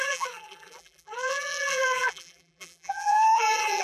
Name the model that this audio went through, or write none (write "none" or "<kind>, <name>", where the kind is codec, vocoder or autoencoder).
vocoder, BigVGAN v2